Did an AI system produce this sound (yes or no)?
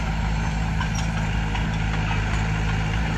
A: no